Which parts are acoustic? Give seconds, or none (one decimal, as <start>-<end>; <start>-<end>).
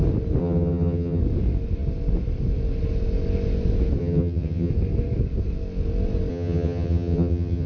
0.0-0.4; 1.2-4.0; 4.7-6.3